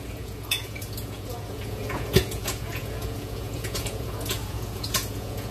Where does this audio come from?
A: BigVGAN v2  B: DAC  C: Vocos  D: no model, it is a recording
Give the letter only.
C